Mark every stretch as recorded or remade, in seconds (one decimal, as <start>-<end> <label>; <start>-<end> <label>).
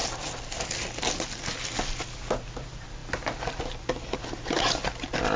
0.0-5.4 recorded